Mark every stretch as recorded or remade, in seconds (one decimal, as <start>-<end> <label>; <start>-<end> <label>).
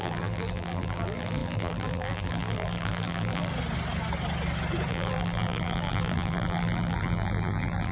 0.0-3.5 remade; 3.5-4.9 recorded; 4.9-7.9 remade